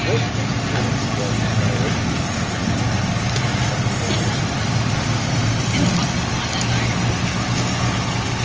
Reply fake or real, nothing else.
real